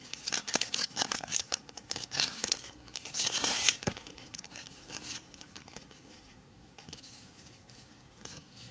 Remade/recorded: remade